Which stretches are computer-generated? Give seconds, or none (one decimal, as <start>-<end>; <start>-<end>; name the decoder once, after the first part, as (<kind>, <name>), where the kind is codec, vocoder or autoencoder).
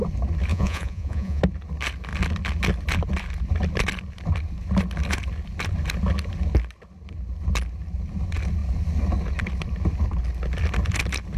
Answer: 0.5-1.4 (vocoder, Vocos)